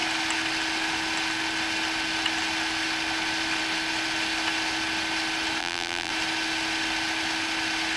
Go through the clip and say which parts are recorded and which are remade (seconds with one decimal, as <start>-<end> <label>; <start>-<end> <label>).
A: 0.0-5.6 recorded; 5.6-6.1 remade; 6.1-8.0 recorded